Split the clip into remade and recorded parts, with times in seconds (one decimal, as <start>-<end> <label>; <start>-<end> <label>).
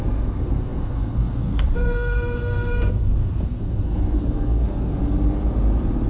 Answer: 0.0-5.0 remade; 5.0-6.1 recorded